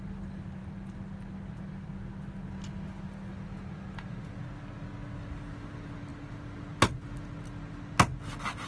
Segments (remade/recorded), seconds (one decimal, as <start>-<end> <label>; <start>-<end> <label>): 0.0-8.7 recorded